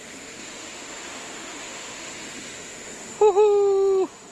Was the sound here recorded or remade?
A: remade